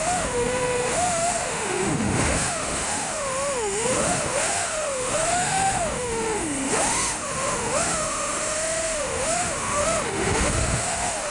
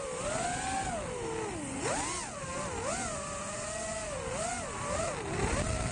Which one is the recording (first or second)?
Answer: second